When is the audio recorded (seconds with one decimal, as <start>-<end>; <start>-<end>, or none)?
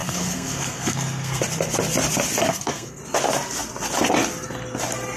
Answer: 1.4-2.5; 3.0-5.2